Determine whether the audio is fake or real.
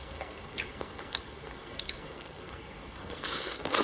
fake